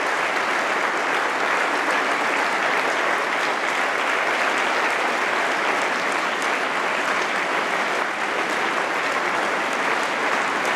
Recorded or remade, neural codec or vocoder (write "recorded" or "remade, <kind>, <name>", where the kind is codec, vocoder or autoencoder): recorded